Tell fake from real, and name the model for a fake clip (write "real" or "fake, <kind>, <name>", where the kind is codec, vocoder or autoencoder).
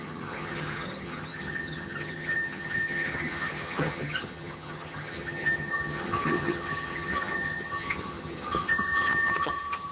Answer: fake, vocoder, HiFi-GAN